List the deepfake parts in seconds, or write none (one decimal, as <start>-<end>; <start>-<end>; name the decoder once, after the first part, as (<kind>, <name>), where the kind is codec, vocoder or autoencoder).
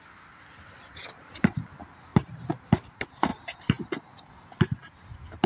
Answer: 2.1-2.7 (vocoder, BigVGAN v2)